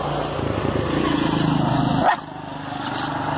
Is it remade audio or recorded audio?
recorded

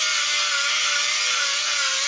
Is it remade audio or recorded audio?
recorded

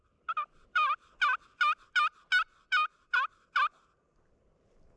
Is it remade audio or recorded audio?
recorded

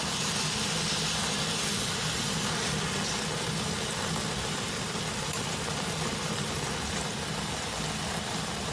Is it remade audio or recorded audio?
recorded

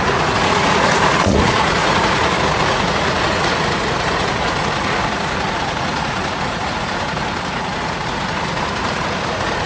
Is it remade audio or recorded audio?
remade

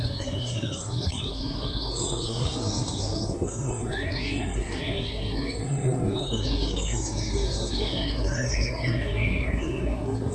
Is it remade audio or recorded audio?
remade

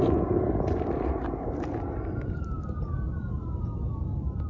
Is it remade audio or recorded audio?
recorded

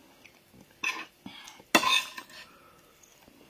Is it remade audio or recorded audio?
recorded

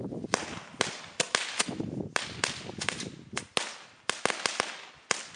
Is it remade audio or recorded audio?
recorded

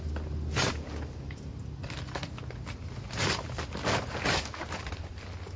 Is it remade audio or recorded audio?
recorded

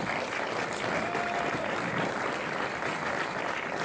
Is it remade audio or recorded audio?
recorded